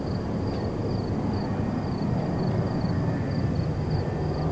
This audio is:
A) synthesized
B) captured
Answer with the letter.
B